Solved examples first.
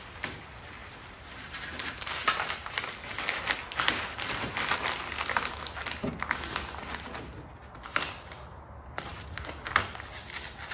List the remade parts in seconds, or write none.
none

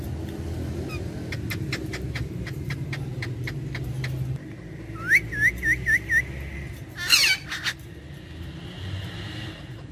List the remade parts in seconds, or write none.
3.1-3.9 (vocoder, BigVGAN v2)

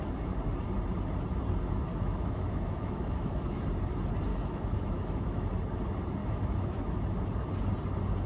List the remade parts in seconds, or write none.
1.9-3.6 (autoencoder, DAC-VAE); 4.3-5.5; 6.2-7.0

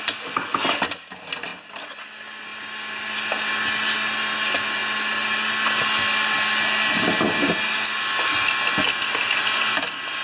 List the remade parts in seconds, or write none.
none

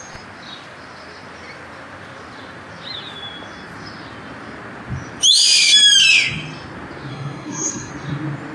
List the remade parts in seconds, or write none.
7.1-7.9 (codec, SNAC)

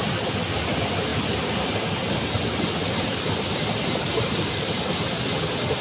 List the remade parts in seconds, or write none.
none

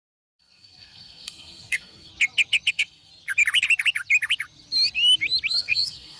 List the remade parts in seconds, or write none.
0.0-2.1 (codec, SNAC); 2.7-3.1; 5.5-6.2